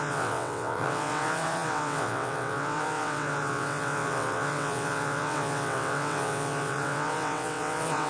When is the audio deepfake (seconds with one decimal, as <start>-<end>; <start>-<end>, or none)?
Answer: 0.0-8.1